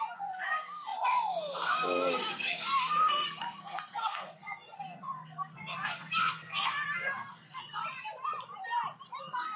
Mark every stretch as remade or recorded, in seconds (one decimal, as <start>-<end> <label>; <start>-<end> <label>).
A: 0.0-7.8 remade; 7.8-9.2 recorded; 9.2-9.6 remade